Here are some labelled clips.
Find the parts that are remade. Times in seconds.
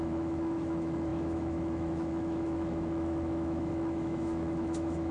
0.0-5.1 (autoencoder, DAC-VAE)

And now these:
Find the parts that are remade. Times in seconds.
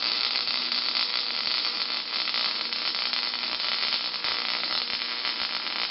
0.0-0.6 (autoencoder, DAC-VAE); 1.1-1.8; 2.9-3.6; 4.3-4.8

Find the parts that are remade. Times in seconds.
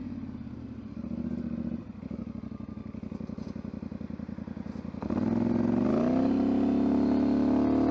none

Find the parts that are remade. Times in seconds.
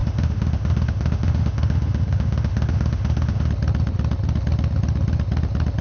0.0-3.5 (autoencoder, DAC-VAE)